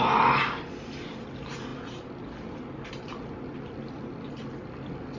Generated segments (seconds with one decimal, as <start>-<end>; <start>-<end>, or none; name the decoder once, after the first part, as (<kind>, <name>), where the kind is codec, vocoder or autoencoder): none